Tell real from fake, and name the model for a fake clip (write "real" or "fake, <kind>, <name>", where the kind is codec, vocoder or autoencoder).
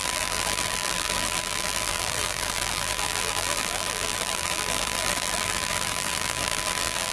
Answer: fake, vocoder, BigVGAN v2